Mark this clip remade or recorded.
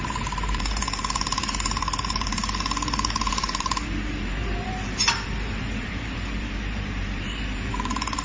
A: remade